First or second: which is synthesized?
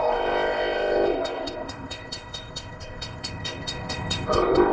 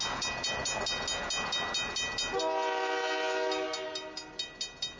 first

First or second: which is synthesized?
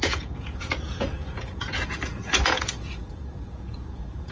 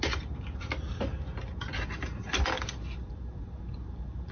first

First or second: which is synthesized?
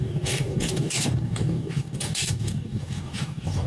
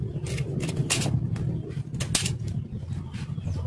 first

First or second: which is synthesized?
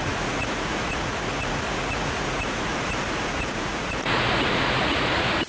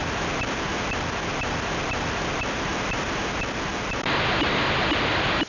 first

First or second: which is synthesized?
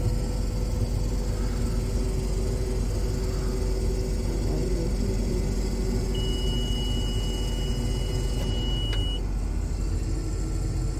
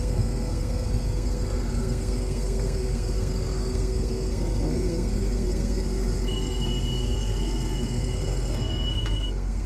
second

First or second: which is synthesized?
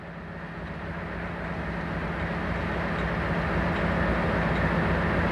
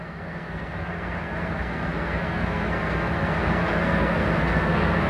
second